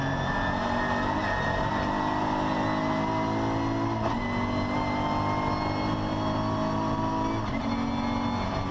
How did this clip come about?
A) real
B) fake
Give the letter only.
A